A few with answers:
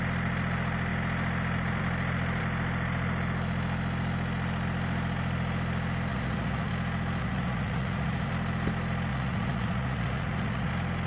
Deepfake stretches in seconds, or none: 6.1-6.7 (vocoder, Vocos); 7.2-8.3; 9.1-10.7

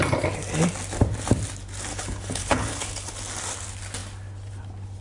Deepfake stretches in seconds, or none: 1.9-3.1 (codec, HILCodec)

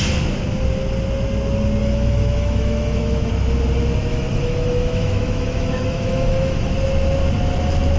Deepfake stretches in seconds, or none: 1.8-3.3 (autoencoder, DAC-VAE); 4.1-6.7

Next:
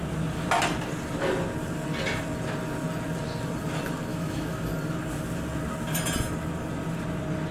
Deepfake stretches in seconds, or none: 4.1-4.7 (autoencoder, DAC-VAE)